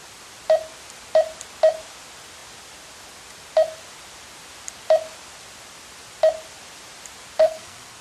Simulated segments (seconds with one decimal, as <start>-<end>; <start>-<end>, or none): 7.4-8.0